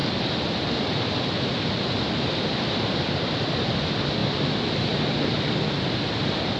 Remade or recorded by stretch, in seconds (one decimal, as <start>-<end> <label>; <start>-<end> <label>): 0.0-6.6 recorded